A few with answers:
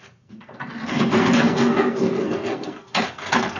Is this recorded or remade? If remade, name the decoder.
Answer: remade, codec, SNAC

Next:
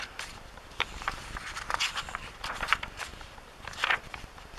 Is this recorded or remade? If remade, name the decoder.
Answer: remade, vocoder, BigVGAN v2